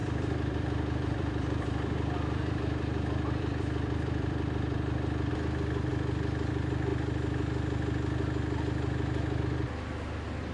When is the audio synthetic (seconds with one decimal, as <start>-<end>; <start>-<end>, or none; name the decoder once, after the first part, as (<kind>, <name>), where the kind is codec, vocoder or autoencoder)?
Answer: 0.0-5.3 (vocoder, BigVGAN v2)